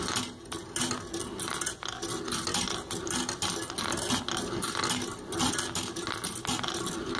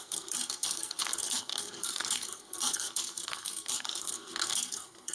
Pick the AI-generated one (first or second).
second